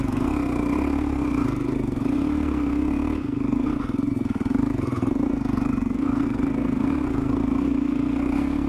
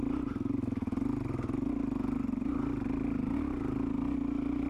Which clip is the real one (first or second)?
second